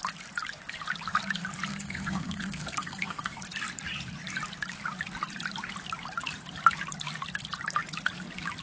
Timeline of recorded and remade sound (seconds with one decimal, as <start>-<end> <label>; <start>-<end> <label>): 0.0-1.7 recorded; 1.7-3.4 remade; 3.4-8.6 recorded